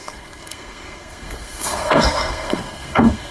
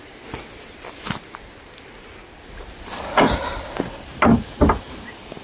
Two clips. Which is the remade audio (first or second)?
first